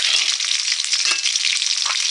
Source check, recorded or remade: recorded